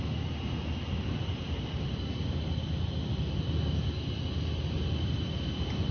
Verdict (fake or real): real